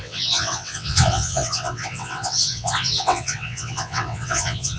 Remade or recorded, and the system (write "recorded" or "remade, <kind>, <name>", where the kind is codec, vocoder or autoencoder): remade, vocoder, WaveNeXt